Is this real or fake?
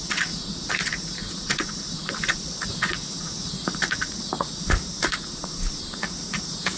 fake